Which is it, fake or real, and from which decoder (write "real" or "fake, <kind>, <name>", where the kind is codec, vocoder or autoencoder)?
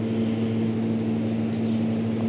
real